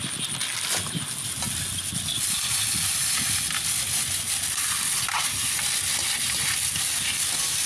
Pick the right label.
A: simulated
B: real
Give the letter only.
B